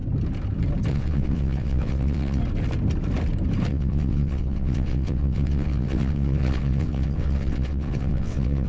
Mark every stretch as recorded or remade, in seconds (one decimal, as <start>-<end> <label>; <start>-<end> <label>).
0.0-0.9 recorded; 0.9-2.4 remade; 2.4-3.7 recorded; 3.7-8.7 remade